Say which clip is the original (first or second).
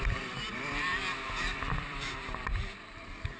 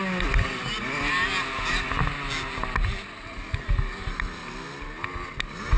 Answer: second